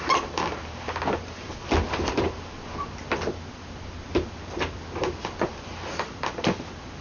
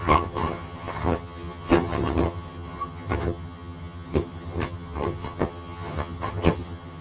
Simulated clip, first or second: second